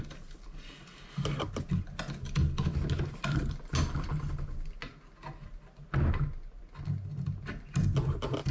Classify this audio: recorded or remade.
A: recorded